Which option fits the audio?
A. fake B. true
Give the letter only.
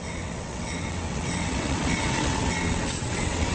A